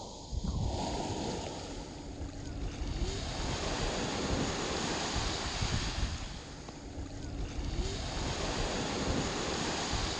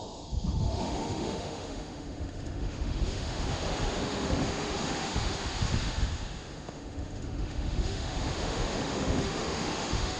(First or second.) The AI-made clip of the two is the second